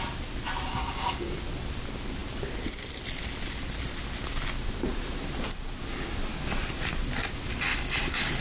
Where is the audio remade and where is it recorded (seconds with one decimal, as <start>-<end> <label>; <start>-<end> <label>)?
0.0-0.7 recorded; 0.7-1.3 remade; 1.3-8.4 recorded